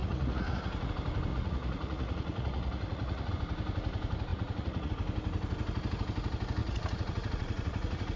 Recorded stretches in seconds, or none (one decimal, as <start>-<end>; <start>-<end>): 0.9-1.3; 3.3-4.3; 4.9-6.6